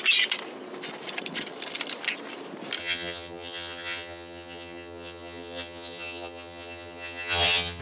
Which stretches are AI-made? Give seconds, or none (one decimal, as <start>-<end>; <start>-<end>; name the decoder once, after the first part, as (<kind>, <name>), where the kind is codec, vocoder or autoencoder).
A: 2.8-7.8 (vocoder, HiFi-GAN)